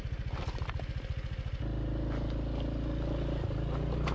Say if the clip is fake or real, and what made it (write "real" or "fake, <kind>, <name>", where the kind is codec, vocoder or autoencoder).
real